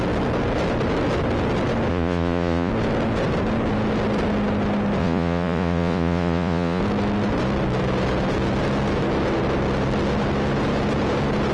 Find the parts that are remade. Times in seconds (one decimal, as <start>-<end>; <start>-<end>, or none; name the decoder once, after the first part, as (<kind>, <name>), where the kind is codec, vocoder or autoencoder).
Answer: 1.9-2.7 (vocoder, Vocos); 5.0-6.8